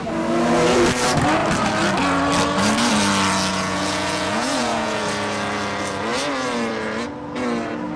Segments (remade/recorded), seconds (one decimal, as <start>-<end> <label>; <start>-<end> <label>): 0.0-3.5 recorded; 3.5-5.0 remade; 5.0-8.0 recorded